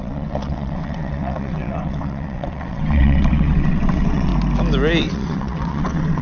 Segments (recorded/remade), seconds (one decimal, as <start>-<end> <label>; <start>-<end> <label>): 0.0-4.3 remade; 4.3-5.0 recorded; 5.0-6.2 remade

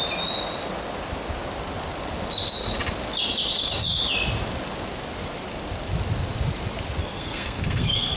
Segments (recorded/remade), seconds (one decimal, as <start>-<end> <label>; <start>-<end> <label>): 0.0-7.0 recorded; 7.0-8.2 remade

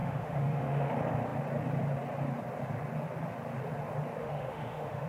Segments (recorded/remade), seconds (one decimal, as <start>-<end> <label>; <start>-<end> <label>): 0.0-0.9 remade; 0.9-4.2 recorded; 4.2-5.1 remade

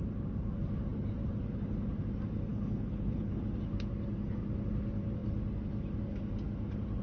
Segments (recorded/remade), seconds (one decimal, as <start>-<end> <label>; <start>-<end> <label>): 0.0-2.5 recorded; 2.5-3.4 remade; 3.4-7.0 recorded